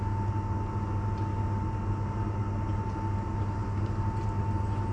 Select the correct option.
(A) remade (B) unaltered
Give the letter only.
B